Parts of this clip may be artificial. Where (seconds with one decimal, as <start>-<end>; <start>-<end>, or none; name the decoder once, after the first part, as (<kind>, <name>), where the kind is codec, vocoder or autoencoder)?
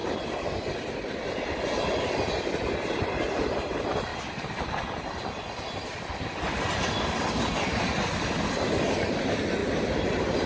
none